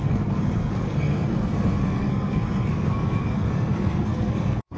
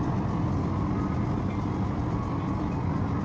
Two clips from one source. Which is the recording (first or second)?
second